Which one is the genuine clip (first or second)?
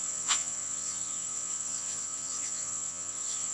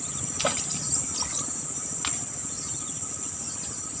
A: second